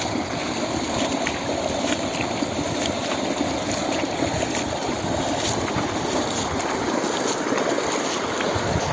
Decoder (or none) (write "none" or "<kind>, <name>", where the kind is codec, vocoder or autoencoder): none